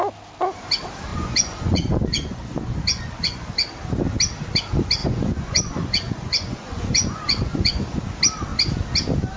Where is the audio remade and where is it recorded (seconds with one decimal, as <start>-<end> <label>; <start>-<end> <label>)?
0.0-1.1 recorded; 1.1-3.5 remade; 3.5-5.0 recorded; 5.0-8.0 remade; 8.0-9.4 recorded